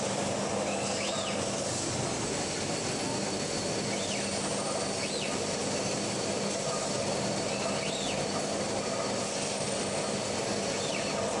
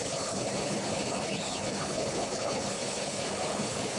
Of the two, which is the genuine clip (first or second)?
first